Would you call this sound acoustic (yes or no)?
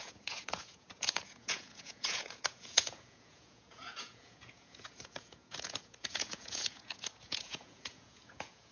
no